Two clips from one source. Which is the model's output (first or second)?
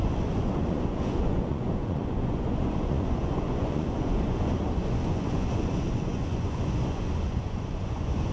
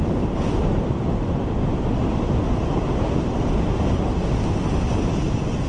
first